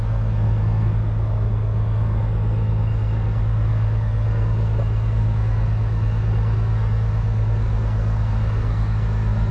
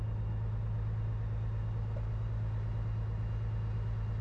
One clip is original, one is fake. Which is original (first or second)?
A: second